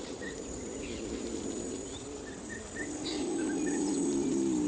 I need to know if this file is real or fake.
real